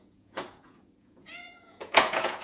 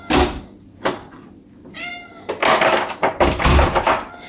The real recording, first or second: second